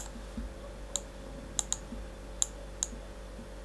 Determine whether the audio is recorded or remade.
recorded